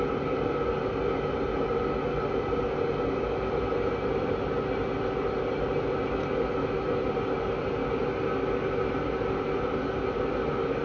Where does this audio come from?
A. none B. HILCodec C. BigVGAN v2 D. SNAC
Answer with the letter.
A